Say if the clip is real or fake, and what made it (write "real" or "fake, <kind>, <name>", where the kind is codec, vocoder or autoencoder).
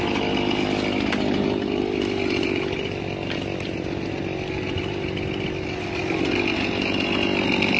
real